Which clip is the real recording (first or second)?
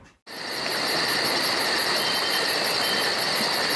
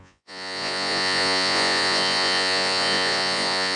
first